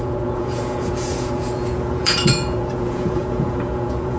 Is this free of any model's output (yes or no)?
no